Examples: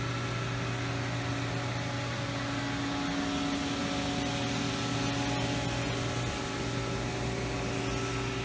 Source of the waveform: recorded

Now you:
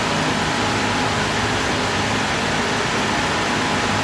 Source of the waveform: recorded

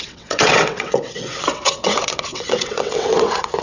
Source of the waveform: remade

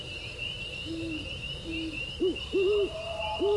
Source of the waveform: remade